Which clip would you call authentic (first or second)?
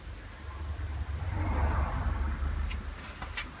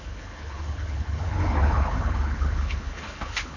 first